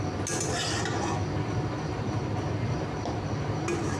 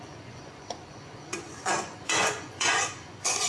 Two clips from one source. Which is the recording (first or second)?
first